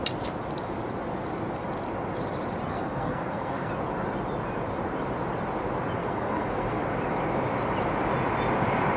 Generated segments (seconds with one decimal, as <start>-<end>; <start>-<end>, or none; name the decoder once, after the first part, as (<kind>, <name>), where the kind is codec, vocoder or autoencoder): 2.7-3.7 (codec, SNAC); 6.0-6.8